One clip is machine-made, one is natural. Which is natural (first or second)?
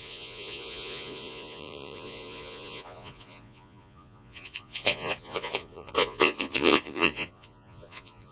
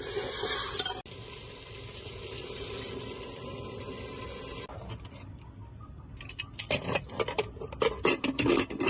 second